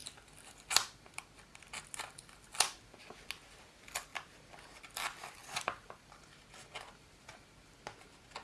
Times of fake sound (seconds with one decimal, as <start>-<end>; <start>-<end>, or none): 0.0-1.2; 4.1-4.8; 5.4-6.4